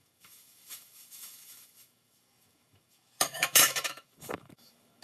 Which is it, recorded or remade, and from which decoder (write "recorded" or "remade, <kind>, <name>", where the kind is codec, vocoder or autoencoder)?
remade, autoencoder, DAC-VAE